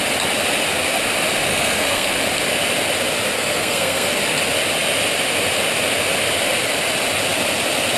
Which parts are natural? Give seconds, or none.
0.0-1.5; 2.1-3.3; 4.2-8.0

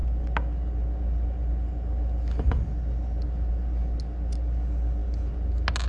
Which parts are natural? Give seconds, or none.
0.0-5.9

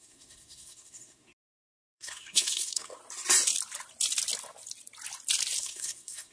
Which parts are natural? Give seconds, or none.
3.0-5.6

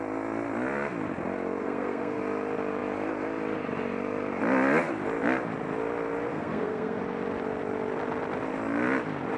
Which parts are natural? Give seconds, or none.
0.0-1.6; 2.2-6.3; 7.0-9.4

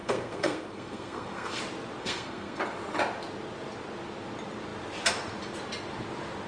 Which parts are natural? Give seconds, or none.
1.6-2.0; 2.6-6.5